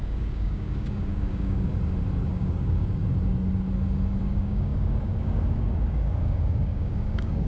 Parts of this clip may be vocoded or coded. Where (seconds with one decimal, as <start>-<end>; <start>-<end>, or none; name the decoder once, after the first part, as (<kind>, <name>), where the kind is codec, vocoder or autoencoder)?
0.0-1.7 (codec, DAC); 2.3-3.0; 4.2-7.5